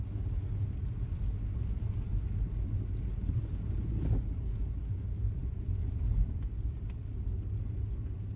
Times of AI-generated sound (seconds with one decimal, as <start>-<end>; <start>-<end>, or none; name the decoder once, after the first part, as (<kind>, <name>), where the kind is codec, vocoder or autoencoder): 5.4-7.3 (vocoder, BigVGAN v2)